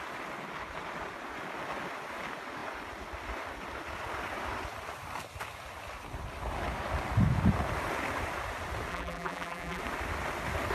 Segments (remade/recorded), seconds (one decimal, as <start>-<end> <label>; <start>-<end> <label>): 0.0-8.9 recorded; 8.9-9.8 remade; 9.8-10.7 recorded